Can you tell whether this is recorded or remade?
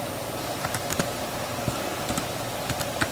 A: remade